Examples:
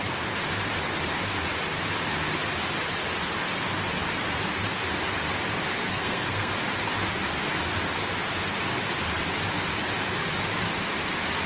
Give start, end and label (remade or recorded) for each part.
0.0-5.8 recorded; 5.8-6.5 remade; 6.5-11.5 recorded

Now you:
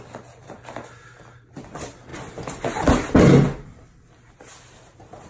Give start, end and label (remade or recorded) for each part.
0.0-5.3 recorded

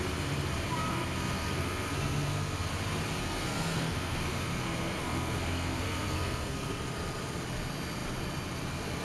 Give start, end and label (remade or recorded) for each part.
0.0-0.9 recorded; 0.9-2.7 remade; 2.7-3.2 recorded; 3.2-6.8 remade; 6.8-9.0 recorded